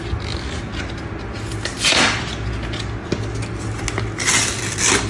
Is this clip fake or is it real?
real